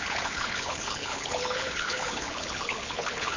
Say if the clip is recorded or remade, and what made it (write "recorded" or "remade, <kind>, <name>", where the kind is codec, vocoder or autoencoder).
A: remade, codec, HILCodec